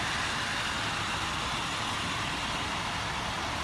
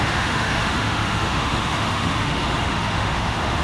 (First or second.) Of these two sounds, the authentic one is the first